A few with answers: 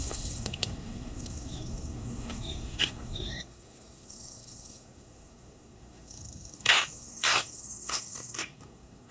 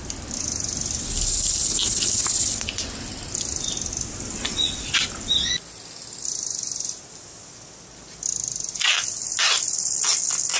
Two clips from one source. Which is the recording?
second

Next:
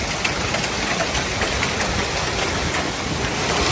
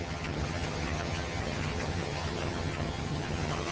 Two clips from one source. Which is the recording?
first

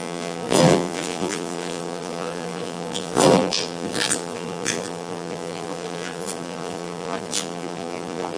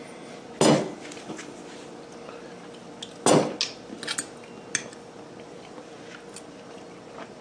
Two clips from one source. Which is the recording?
second